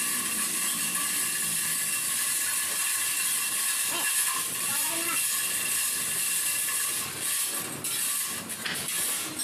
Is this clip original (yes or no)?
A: yes